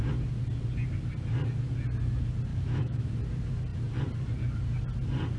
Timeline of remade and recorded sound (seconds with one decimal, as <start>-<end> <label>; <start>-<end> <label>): 0.0-2.5 recorded; 2.5-3.1 remade; 3.1-5.4 recorded